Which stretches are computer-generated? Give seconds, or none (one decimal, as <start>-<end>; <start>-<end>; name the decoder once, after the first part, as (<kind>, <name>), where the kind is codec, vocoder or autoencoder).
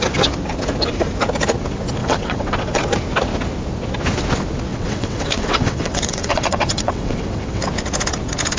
2.0-2.8 (vocoder, WaveNeXt); 4.7-7.6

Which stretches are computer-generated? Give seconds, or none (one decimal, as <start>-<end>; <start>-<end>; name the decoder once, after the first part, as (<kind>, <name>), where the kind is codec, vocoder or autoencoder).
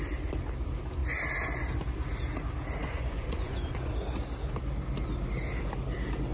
2.8-3.9 (vocoder, Vocos)